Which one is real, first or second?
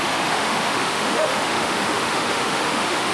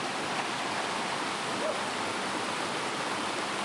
second